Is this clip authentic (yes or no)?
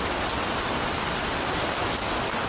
yes